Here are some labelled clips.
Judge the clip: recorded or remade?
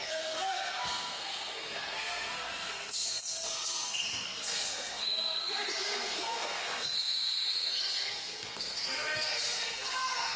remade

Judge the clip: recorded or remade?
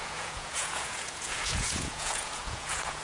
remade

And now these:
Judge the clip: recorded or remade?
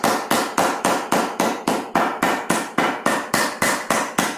recorded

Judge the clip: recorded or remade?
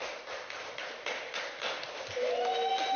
recorded